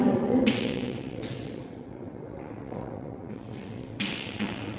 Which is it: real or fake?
fake